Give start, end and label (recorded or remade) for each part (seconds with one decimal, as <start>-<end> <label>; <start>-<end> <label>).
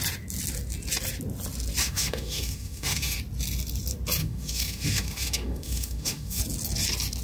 0.0-1.8 recorded; 1.8-3.2 remade; 3.2-4.2 recorded; 4.2-6.4 remade; 6.4-7.2 recorded